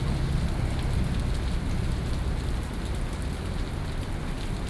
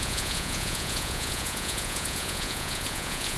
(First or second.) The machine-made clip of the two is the second